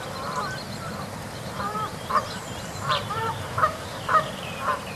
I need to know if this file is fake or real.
fake